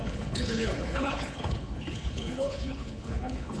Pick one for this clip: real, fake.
fake